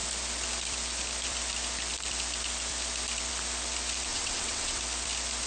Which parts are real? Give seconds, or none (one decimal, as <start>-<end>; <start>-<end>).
0.0-4.1; 4.8-5.5